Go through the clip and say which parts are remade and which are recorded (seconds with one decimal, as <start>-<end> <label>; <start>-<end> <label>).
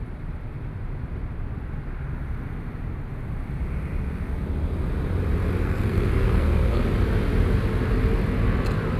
0.0-5.6 recorded; 5.6-6.8 remade; 6.8-9.0 recorded